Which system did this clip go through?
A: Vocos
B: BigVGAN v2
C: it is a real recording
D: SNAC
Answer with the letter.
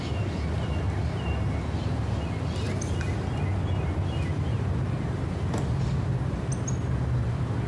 C